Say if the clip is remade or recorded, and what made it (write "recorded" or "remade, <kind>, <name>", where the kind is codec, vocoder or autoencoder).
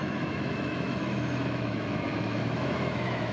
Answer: remade, autoencoder, DAC-VAE